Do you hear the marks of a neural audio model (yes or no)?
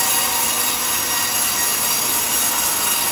no